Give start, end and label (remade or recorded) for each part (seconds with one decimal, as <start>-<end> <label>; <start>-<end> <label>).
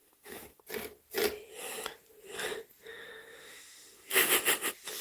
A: 0.0-0.6 remade; 0.6-2.9 recorded; 2.9-4.3 remade; 4.3-5.0 recorded